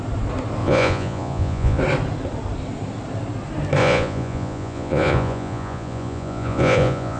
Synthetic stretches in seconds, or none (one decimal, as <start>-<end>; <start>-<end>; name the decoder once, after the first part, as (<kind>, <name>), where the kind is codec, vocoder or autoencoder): 0.6-1.8 (vocoder, Vocos); 3.8-7.2